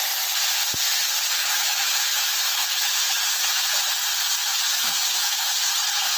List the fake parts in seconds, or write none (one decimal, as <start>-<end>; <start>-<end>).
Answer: 1.4-3.7; 4.4-6.2